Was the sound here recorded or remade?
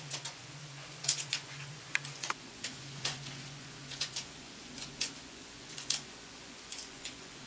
remade